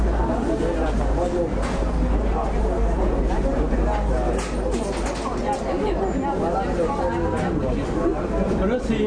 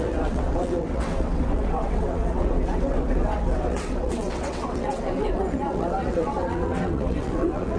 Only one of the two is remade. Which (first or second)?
second